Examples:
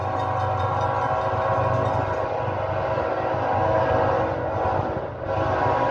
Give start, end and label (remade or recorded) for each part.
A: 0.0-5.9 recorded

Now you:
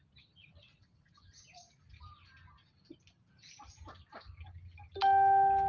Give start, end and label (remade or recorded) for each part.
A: 0.0-5.7 recorded

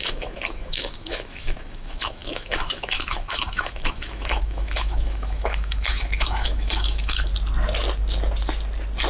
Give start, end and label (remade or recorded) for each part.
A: 0.0-7.3 remade; 7.3-9.1 recorded

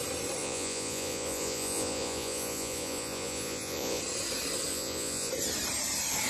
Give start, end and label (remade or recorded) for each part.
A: 0.0-0.4 recorded; 0.4-4.0 remade; 4.0-4.7 recorded; 4.7-5.3 remade; 5.3-6.3 recorded

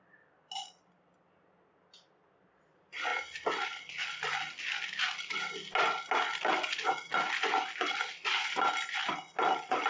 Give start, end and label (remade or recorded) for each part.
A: 0.0-9.9 recorded

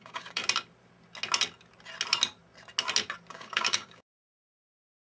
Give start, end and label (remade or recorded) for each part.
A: 0.0-0.4 remade; 0.4-3.3 recorded; 3.3-5.1 remade

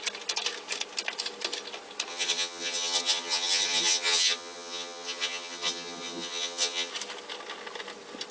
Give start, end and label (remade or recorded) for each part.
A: 0.0-2.1 recorded; 2.1-6.9 remade; 6.9-8.3 recorded

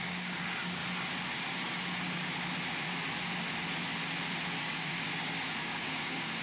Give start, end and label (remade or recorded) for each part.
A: 0.0-0.8 remade; 0.8-4.6 recorded; 4.6-5.1 remade; 5.1-5.6 recorded; 5.6-6.4 remade